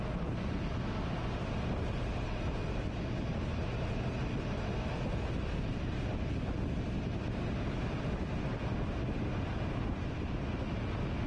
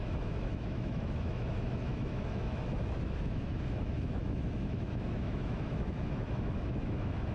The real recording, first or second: first